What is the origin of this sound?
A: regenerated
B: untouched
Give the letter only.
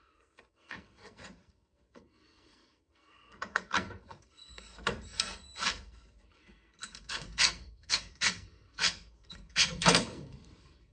A